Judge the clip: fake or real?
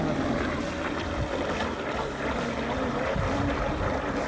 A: real